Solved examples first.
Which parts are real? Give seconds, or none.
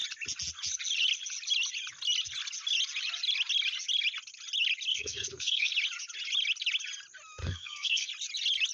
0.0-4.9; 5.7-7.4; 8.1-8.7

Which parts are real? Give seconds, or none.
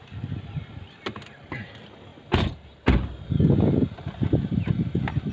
0.0-5.3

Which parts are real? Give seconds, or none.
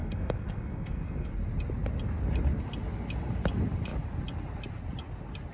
1.3-5.5